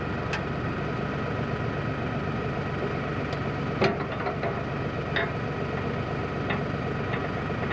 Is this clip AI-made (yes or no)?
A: no